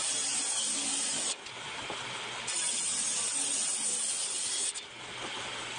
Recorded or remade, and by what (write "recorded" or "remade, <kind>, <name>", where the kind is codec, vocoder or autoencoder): recorded